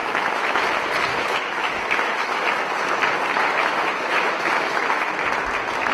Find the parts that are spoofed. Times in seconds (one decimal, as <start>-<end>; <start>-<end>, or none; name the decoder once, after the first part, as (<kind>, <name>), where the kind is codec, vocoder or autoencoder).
0.0-0.5 (autoencoder, DAC-VAE); 1.1-2.9; 3.6-5.1